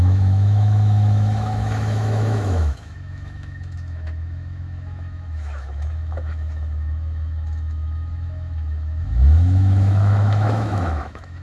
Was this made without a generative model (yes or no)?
no